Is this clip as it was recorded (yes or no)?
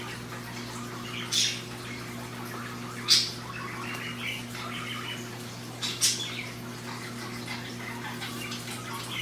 yes